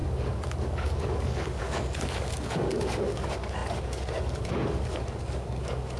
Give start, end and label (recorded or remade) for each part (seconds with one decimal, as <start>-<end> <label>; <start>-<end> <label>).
0.0-6.0 remade